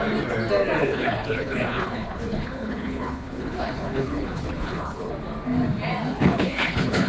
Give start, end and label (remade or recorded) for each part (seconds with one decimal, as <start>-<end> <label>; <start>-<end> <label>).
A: 0.0-0.8 recorded; 0.8-5.1 remade; 5.1-6.1 recorded; 6.1-7.1 remade